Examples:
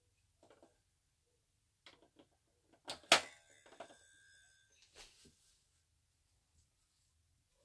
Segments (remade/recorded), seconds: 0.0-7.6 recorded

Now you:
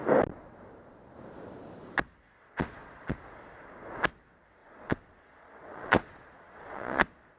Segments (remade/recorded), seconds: 0.0-4.6 recorded; 4.6-7.4 remade

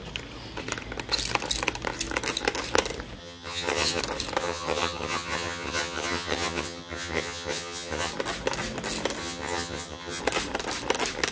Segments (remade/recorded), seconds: 0.0-3.2 recorded; 3.2-4.0 remade; 4.0-4.4 recorded; 4.4-8.1 remade; 8.1-9.2 recorded; 9.2-10.2 remade; 10.2-11.3 recorded

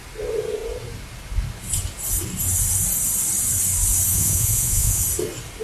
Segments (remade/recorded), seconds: 0.0-4.1 recorded; 4.1-5.0 remade; 5.0-5.6 recorded

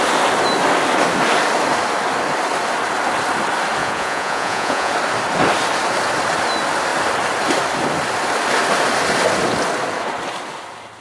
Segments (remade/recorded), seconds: 0.0-3.8 recorded; 3.8-4.9 remade; 4.9-11.0 recorded

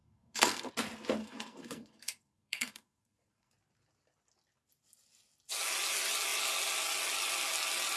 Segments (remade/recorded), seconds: 0.0-0.7 remade; 0.7-1.2 recorded; 1.2-3.5 remade; 3.5-8.0 recorded

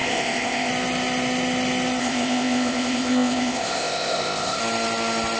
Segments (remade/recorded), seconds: 0.0-0.7 remade; 0.7-2.0 recorded; 2.0-4.6 remade; 4.6-5.4 recorded